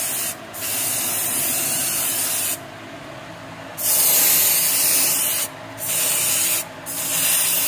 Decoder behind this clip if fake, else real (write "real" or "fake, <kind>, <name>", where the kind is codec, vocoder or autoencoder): real